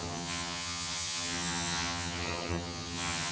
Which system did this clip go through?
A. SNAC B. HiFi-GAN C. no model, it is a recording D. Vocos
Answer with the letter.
B